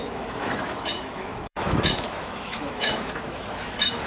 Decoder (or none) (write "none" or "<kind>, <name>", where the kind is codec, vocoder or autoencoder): autoencoder, DAC-VAE